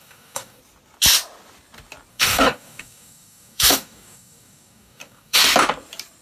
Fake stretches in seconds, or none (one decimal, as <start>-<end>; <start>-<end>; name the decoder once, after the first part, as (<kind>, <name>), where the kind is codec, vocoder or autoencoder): 0.0-0.6 (codec, DAC); 2.1-5.4